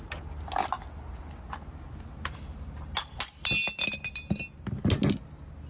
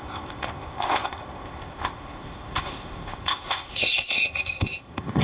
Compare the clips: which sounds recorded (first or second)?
first